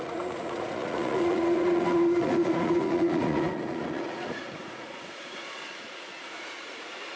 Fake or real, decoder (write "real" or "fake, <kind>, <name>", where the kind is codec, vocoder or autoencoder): fake, vocoder, Vocos